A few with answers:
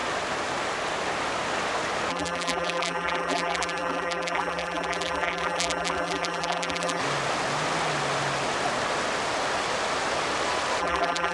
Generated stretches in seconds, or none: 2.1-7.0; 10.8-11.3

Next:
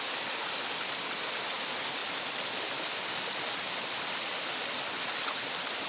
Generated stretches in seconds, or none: none

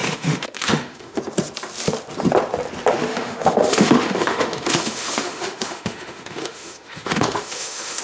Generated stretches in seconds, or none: 0.0-1.2; 3.1-8.0

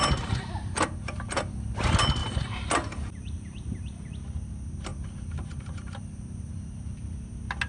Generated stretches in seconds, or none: 0.0-1.5; 2.2-4.1; 4.9-6.5

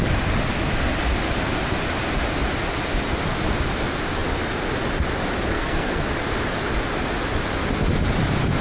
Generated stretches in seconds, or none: 5.5-6.1

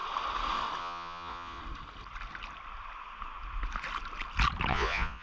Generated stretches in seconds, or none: 0.8-1.6; 4.7-5.2